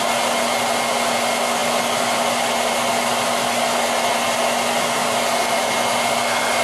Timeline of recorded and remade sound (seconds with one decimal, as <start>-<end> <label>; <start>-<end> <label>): 0.0-6.6 recorded